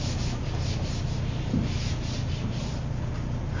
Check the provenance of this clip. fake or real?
real